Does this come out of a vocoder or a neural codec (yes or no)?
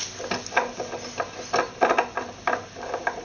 no